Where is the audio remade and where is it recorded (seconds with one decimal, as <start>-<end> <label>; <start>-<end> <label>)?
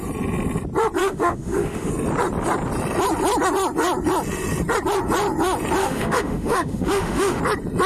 0.0-1.0 recorded; 1.0-1.9 remade; 1.9-5.8 recorded; 5.8-7.4 remade; 7.4-7.9 recorded